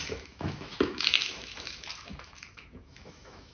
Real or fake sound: fake